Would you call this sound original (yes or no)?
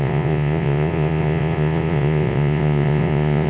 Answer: no